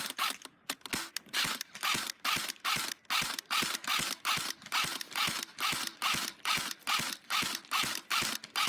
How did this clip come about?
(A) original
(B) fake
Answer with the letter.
A